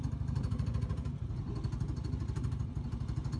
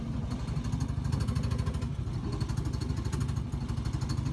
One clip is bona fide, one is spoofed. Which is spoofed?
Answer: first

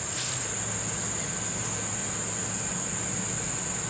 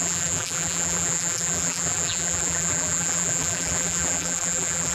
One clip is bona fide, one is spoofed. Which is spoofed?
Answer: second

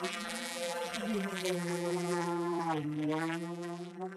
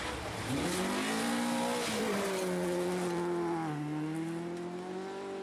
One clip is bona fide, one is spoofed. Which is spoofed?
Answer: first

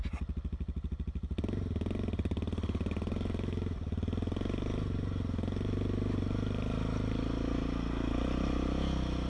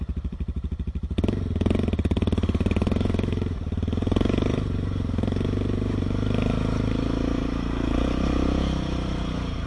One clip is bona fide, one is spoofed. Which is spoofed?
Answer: second